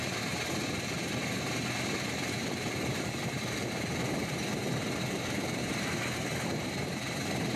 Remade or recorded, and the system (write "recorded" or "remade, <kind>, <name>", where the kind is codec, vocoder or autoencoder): remade, vocoder, BigVGAN v2